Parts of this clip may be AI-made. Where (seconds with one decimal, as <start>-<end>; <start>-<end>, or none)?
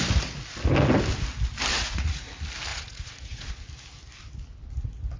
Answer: 1.7-2.3; 2.7-3.5